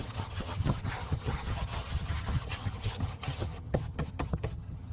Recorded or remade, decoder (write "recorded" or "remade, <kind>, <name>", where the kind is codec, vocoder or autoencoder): remade, vocoder, HiFi-GAN